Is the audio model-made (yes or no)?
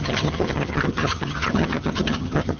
yes